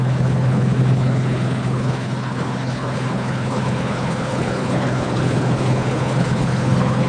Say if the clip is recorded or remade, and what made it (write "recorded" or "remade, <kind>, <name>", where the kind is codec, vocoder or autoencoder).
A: remade, codec, HILCodec